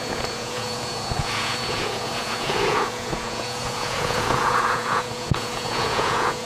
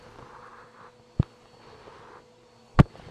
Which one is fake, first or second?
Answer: first